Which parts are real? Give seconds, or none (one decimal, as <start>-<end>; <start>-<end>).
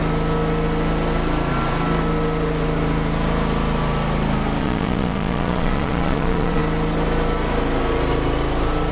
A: 0.0-4.6; 6.6-8.9